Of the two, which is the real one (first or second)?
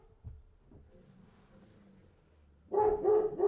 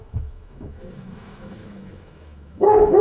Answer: first